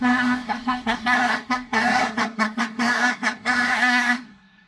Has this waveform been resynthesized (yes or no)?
yes